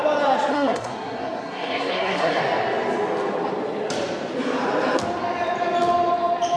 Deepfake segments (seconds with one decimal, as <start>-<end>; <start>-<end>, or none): 0.5-2.4